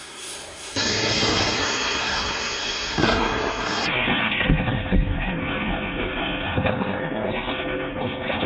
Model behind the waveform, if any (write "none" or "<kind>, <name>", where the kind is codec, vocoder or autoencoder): codec, SNAC